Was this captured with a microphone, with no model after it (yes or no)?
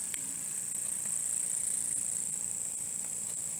no